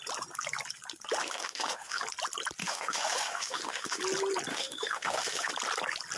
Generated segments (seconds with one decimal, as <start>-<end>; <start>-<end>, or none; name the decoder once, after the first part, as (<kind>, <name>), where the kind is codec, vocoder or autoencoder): 1.2-2.0 (autoencoder, DAC-VAE); 2.6-4.0; 4.5-5.5